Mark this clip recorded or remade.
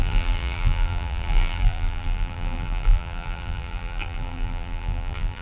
remade